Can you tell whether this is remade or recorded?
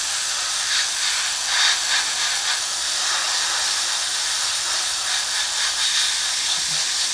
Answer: recorded